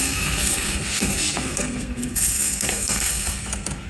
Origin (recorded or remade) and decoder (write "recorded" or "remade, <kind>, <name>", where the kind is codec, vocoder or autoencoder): remade, codec, SNAC